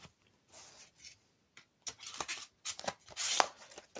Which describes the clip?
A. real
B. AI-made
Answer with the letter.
A